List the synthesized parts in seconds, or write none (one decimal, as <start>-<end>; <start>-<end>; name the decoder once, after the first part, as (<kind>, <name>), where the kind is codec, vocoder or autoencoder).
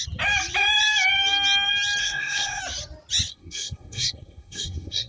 2.0-2.6 (codec, SNAC); 3.3-5.1